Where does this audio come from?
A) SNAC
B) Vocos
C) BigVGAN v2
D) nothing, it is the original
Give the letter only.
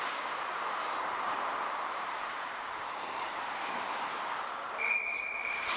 C